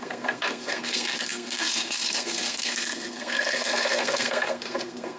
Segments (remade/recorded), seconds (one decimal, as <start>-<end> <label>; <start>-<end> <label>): 0.0-5.2 remade